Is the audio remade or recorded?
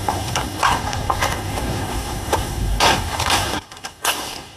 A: remade